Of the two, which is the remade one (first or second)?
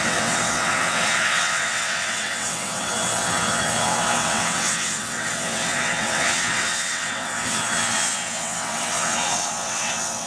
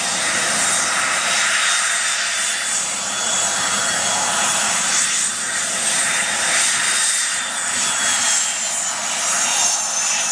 first